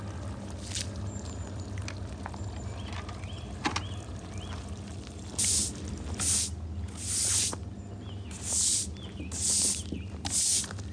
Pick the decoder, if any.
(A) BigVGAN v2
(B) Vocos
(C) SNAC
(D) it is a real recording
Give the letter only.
D